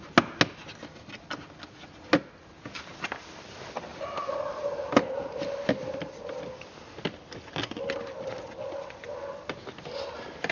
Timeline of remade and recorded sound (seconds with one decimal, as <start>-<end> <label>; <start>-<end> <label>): 0.0-3.9 recorded; 3.9-5.0 remade; 5.0-10.5 recorded